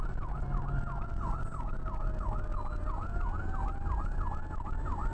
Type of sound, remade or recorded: recorded